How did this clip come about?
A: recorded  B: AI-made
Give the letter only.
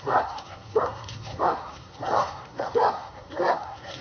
B